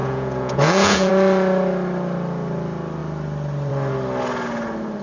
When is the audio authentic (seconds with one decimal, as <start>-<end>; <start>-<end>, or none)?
1.1-5.0